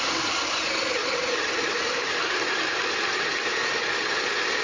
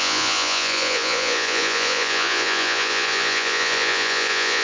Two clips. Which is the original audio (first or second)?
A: first